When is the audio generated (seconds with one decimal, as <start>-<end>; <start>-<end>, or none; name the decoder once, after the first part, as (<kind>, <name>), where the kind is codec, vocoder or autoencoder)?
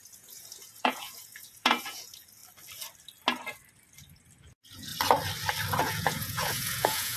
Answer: 0.0-2.4 (vocoder, Vocos); 4.4-4.9; 5.8-7.2